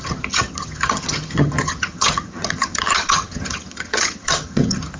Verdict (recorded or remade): remade